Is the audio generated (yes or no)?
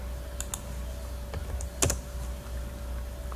no